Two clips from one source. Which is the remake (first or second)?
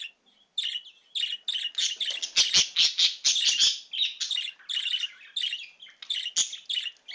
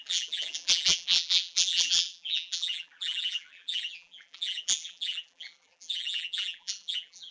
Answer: second